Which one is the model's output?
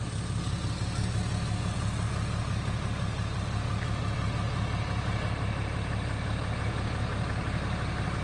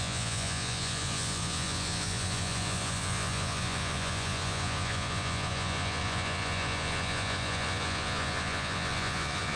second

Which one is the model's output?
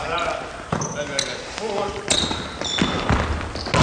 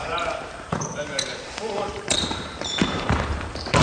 second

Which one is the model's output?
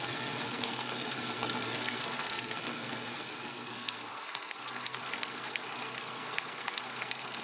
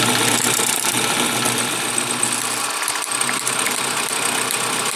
first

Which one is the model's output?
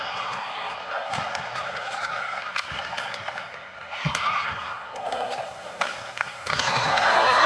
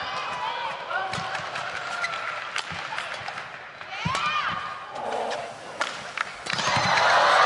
first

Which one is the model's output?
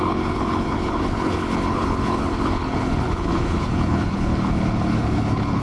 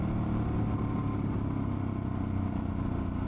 first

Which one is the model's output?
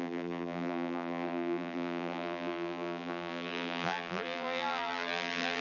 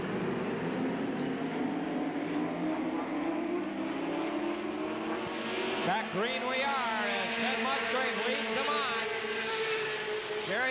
first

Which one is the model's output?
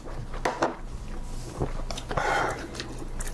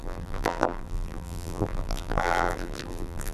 second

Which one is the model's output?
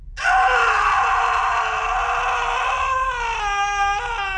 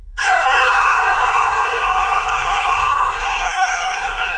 second